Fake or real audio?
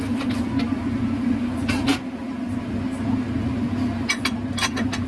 real